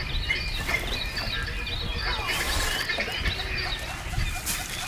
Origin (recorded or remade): recorded